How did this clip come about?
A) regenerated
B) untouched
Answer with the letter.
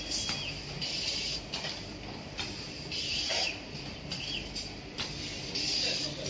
B